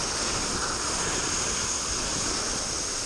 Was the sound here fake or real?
real